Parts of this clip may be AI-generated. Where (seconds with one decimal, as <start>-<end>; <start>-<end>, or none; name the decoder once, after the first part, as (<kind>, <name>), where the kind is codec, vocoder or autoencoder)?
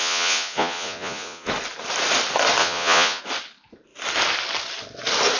0.0-1.5 (vocoder, Vocos); 2.6-3.2